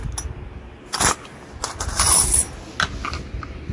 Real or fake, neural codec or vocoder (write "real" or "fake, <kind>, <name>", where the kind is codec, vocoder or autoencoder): real